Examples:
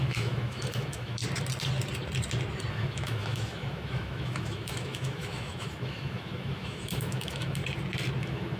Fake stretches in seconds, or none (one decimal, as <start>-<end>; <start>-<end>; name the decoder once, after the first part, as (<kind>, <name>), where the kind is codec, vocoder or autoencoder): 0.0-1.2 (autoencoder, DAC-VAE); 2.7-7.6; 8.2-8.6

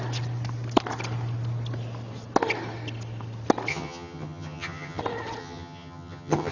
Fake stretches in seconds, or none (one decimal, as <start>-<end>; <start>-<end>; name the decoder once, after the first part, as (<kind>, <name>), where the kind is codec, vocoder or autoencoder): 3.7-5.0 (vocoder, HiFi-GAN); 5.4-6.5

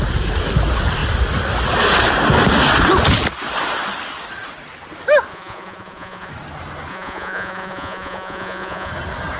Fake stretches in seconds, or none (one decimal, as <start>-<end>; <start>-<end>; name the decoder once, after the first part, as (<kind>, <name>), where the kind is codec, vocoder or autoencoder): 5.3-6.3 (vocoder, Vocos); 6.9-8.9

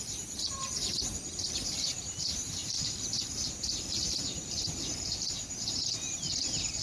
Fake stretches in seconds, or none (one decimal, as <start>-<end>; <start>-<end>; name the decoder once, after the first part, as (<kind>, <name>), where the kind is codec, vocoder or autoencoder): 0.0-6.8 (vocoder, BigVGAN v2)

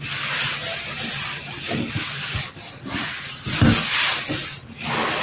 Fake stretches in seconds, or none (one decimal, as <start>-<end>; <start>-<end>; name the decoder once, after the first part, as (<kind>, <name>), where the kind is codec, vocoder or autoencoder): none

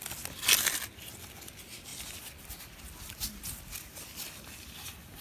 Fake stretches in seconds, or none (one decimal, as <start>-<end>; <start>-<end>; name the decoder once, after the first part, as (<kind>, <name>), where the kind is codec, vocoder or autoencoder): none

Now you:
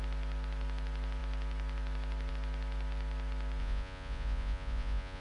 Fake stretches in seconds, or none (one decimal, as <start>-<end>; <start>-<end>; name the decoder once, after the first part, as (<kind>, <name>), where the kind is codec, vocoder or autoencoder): 3.6-5.2 (vocoder, Vocos)